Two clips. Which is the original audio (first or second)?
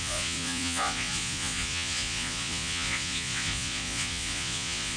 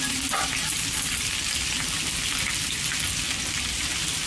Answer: second